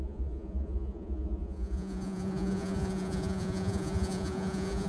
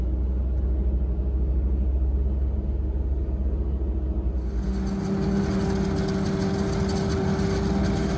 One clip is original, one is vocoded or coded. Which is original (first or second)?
second